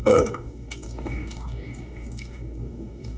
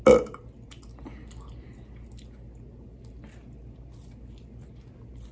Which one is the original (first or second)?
second